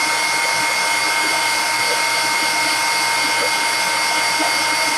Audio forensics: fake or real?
real